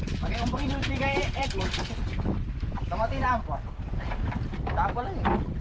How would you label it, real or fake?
real